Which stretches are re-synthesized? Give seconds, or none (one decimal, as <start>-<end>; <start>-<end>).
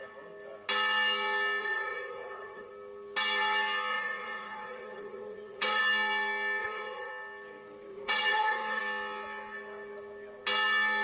1.6-2.7; 3.9-5.8; 6.6-7.1; 7.9-8.8